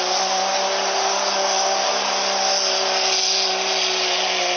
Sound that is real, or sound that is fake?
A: real